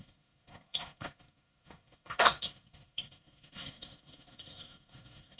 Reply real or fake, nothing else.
fake